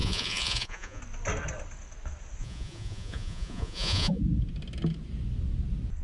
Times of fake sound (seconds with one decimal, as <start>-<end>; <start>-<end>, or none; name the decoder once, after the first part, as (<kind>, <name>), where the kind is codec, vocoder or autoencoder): 0.0-1.0 (vocoder, Vocos); 2.4-4.2